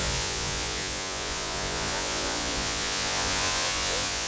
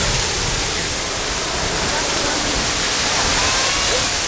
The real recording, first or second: second